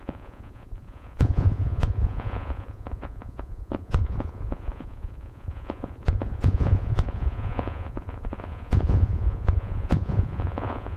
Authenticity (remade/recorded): remade